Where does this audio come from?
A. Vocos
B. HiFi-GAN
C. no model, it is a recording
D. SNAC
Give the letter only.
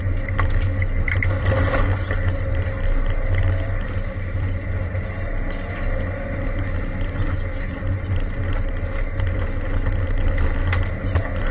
C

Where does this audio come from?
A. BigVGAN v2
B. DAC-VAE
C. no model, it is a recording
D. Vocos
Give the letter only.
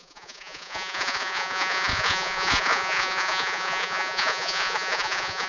D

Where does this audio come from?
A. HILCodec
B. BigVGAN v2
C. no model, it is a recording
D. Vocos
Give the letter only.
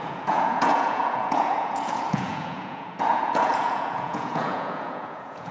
D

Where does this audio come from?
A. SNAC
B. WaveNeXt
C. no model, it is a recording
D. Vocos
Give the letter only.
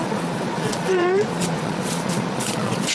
D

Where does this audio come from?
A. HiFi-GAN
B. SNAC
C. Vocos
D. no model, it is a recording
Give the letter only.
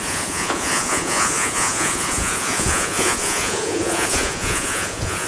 C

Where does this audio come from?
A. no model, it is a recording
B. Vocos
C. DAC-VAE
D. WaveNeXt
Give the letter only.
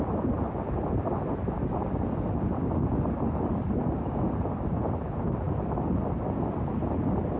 A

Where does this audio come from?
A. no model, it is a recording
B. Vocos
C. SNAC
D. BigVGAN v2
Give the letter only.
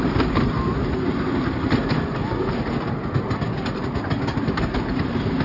A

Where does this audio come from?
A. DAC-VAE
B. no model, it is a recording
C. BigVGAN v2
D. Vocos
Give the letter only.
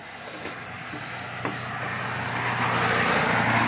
B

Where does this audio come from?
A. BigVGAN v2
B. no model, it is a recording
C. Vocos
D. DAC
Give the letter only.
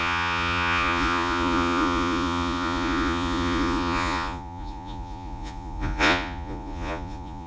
C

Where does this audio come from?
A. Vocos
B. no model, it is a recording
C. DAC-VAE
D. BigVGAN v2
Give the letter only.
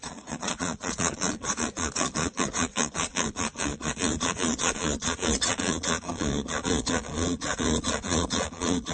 A